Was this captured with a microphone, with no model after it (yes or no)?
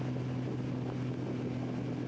yes